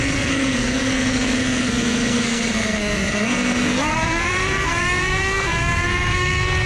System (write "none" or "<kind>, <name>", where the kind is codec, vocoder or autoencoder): codec, SNAC